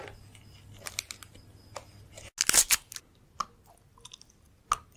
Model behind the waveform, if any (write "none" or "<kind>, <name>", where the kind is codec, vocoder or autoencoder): none